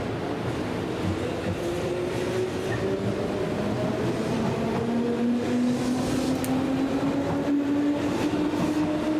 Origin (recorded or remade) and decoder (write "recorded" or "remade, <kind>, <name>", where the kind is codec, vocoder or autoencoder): recorded